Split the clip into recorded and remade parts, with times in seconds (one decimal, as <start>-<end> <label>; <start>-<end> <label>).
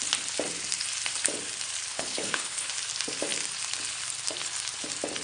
0.0-1.9 recorded; 1.9-2.7 remade; 2.7-5.2 recorded